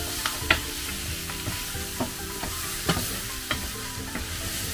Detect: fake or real fake